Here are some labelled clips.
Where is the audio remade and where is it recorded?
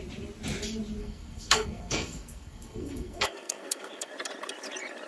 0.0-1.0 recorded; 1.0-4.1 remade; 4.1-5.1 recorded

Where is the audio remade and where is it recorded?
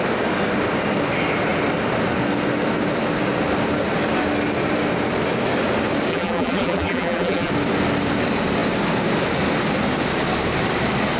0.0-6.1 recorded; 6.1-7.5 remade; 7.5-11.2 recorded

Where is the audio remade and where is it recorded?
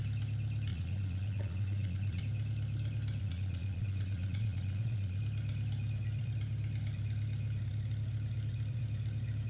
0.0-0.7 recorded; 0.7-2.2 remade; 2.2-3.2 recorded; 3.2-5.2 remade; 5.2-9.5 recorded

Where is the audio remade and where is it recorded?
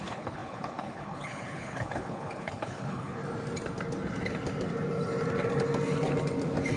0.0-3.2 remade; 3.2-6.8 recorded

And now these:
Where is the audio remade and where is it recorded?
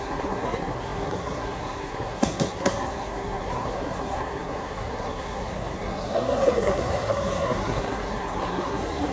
0.0-9.1 remade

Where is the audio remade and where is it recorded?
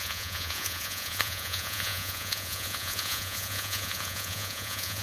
0.0-5.0 remade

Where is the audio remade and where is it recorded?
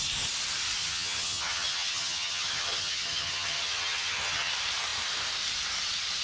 0.0-0.8 recorded; 0.8-4.5 remade; 4.5-6.2 recorded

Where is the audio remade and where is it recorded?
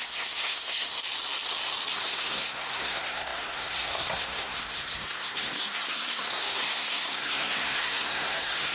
0.0-1.0 remade; 1.0-1.9 recorded; 1.9-8.7 remade